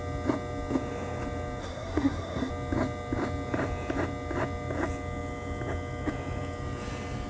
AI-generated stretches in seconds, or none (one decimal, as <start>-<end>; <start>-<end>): 1.6-2.5